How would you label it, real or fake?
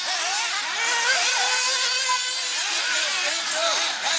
real